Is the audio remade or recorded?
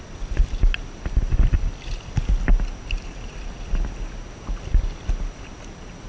recorded